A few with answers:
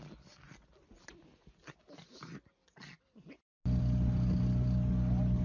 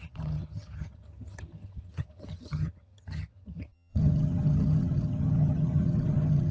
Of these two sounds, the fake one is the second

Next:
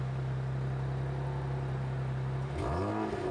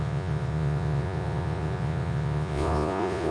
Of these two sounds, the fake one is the second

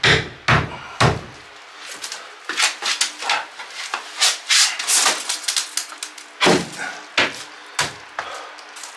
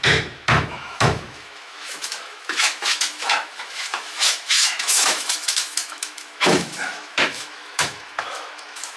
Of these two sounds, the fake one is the second